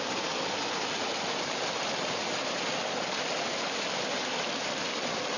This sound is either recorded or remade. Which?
recorded